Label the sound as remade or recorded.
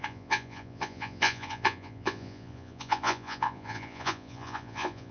remade